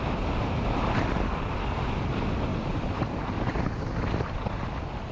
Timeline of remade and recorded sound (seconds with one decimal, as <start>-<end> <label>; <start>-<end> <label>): 0.0-5.1 recorded